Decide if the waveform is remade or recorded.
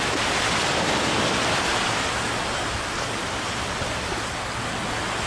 recorded